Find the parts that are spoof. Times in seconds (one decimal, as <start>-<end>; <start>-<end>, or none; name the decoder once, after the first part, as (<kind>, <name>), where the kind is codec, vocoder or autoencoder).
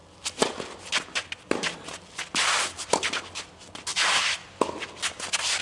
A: none